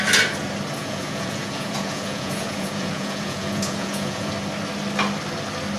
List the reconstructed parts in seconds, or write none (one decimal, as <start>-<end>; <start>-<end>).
0.8-4.3

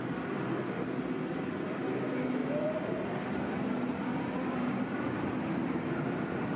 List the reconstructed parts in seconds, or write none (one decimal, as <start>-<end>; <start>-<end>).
none

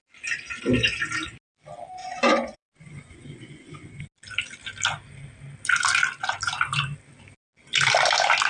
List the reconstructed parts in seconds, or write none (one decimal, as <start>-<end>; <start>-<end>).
2.0-4.0

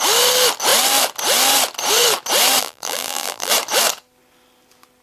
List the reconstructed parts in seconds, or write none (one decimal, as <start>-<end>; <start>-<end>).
2.6-3.5

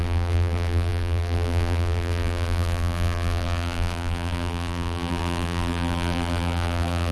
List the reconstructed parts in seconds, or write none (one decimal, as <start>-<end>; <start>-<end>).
0.0-7.1

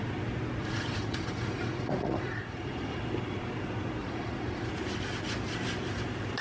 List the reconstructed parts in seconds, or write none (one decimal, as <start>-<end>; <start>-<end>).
0.6-3.0; 4.0-4.7

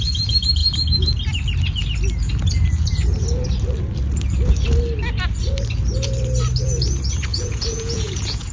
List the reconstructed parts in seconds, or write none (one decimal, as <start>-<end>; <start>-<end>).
7.3-8.5